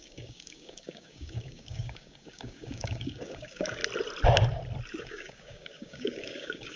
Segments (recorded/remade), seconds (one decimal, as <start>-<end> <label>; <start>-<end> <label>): 0.0-3.8 remade; 3.8-5.0 recorded; 5.0-6.8 remade